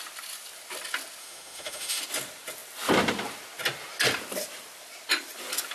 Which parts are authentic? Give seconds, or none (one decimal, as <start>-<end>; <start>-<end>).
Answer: 0.0-1.2; 2.0-5.7